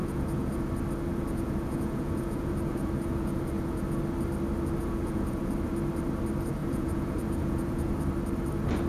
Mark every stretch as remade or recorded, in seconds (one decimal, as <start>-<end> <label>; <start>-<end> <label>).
0.0-0.7 remade; 0.7-1.1 recorded; 1.1-4.0 remade; 4.0-4.8 recorded; 4.8-5.5 remade; 5.5-6.6 recorded; 6.6-7.9 remade; 7.9-8.9 recorded

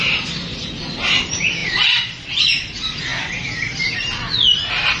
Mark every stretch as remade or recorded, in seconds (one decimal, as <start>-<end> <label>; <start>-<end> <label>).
0.0-5.0 recorded

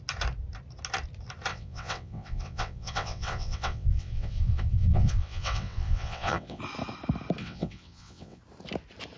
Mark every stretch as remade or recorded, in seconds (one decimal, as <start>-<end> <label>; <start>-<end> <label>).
0.0-1.5 recorded; 1.5-6.6 remade; 6.6-7.4 recorded; 7.4-8.4 remade; 8.4-9.2 recorded

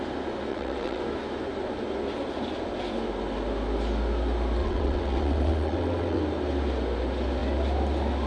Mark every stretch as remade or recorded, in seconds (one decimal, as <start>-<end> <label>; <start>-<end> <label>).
0.0-0.5 recorded; 0.5-1.0 remade; 1.0-4.6 recorded; 4.6-6.2 remade; 6.2-8.3 recorded

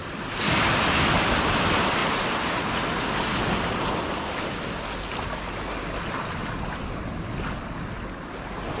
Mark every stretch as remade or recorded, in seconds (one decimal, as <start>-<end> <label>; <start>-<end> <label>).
0.0-8.8 recorded

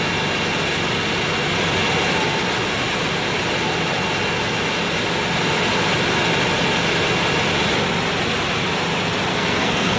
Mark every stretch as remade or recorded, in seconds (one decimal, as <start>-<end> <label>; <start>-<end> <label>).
0.0-9.3 recorded; 9.3-10.0 remade

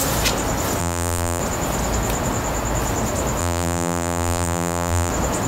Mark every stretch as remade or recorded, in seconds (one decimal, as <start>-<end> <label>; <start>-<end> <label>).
0.0-0.8 recorded; 0.8-1.4 remade; 1.4-3.4 recorded; 3.4-5.1 remade; 5.1-5.5 recorded